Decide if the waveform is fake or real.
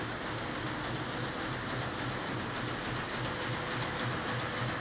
real